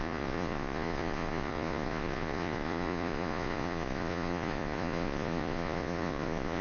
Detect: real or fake fake